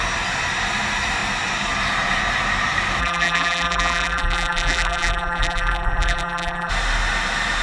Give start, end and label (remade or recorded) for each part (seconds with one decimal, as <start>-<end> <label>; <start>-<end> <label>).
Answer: 0.0-3.0 recorded; 3.0-6.7 remade; 6.7-7.6 recorded